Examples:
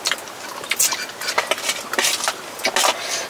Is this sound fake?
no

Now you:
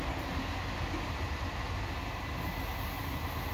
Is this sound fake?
no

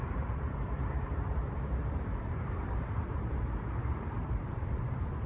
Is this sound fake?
yes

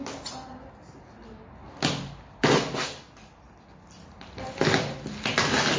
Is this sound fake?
no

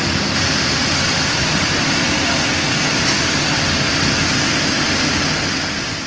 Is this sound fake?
no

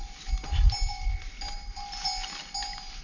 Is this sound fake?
no